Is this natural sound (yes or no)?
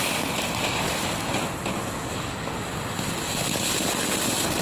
yes